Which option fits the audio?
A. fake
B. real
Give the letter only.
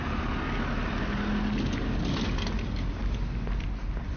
B